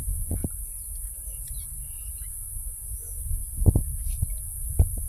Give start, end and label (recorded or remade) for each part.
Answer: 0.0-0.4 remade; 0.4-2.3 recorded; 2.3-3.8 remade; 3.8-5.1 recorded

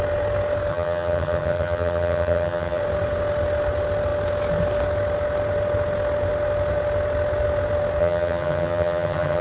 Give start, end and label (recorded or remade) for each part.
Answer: 0.0-0.7 recorded; 0.7-2.8 remade; 2.8-8.0 recorded; 8.0-9.4 remade